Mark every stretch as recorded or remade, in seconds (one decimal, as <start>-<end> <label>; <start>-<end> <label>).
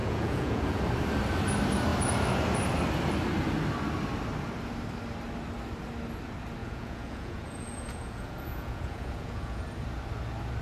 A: 0.0-0.8 remade; 0.8-6.6 recorded; 6.6-9.6 remade; 9.6-10.6 recorded